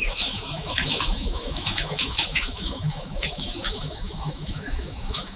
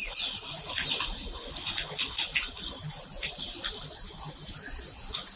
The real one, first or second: second